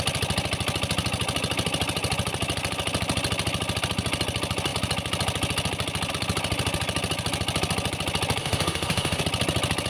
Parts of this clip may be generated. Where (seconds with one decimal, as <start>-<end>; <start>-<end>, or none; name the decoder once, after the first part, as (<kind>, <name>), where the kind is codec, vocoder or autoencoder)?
8.4-9.2 (autoencoder, DAC-VAE)